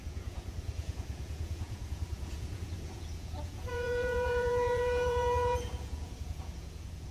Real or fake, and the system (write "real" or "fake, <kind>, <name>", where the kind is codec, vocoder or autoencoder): fake, vocoder, Vocos